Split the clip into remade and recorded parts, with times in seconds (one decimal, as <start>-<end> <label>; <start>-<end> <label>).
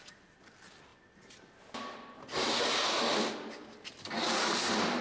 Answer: 0.0-5.0 recorded